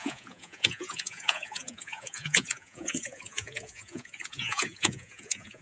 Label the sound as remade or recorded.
remade